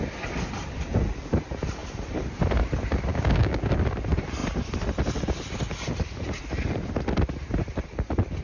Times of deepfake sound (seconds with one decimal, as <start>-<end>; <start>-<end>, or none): 3.1-3.7

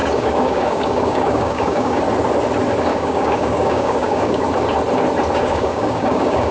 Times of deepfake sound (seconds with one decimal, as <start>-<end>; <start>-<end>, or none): 0.0-2.0; 2.9-4.4; 5.4-6.5

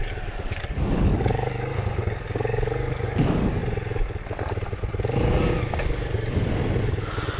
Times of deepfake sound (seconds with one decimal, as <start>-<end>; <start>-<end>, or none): 0.0-3.6; 6.8-7.4